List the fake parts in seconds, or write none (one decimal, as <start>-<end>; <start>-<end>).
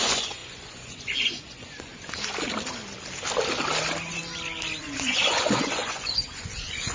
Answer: 0.0-1.9; 4.8-6.9